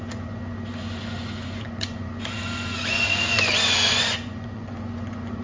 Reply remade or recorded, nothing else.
remade